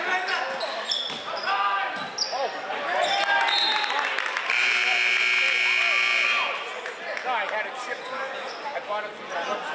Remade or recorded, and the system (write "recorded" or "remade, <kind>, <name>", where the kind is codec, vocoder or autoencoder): recorded